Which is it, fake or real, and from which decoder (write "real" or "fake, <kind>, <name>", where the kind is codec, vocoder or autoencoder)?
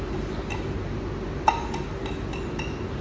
real